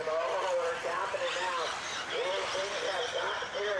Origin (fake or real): real